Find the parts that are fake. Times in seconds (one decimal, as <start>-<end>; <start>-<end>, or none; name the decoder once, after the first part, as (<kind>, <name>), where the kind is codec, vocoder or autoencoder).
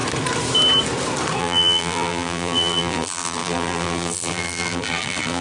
1.4-5.4 (vocoder, BigVGAN v2)